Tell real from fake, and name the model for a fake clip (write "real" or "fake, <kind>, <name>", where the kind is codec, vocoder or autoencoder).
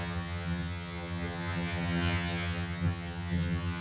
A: fake, vocoder, HiFi-GAN